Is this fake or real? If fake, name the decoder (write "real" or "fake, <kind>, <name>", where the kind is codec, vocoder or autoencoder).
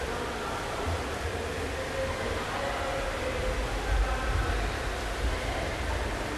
real